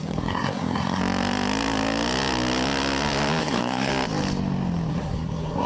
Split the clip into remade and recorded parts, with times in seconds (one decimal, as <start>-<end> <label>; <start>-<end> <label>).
0.0-1.0 remade; 1.0-3.4 recorded; 3.4-3.9 remade; 3.9-4.9 recorded; 4.9-5.7 remade

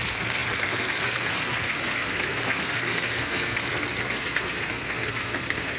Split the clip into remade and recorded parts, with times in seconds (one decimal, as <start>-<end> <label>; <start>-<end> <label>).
0.0-5.8 remade

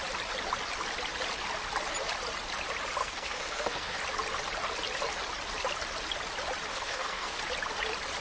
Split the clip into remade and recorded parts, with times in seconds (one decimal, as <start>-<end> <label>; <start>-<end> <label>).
0.0-3.0 recorded; 3.0-4.0 remade; 4.0-6.7 recorded; 6.7-7.4 remade; 7.4-8.2 recorded